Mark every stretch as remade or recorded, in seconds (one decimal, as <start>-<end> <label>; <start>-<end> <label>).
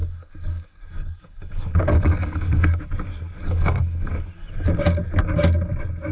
0.0-2.8 remade; 2.8-3.4 recorded; 3.4-4.1 remade; 4.1-6.1 recorded